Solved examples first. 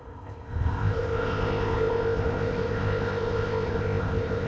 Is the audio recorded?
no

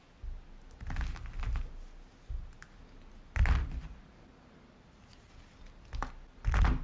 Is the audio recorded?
yes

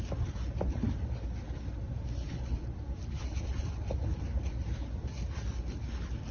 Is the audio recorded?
yes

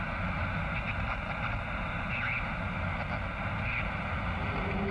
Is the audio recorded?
yes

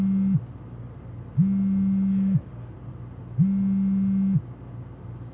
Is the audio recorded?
yes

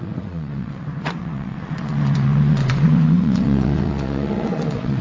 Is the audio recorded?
no